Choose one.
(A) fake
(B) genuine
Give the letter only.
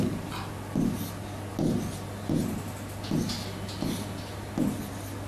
B